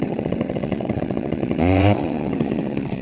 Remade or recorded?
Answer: remade